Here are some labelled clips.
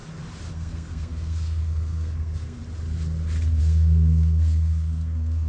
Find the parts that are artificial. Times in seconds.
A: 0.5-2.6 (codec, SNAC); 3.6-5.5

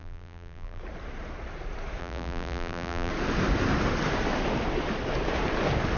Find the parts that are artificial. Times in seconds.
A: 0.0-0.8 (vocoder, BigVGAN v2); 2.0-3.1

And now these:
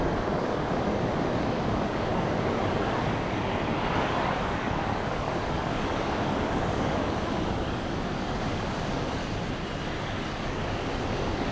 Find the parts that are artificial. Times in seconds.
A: 0.0-9.2 (codec, DAC); 10.0-11.5

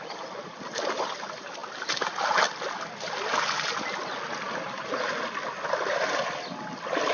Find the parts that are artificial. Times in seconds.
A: none

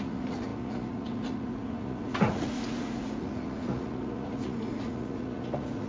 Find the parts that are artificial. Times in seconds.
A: 0.0-5.9 (vocoder, Vocos)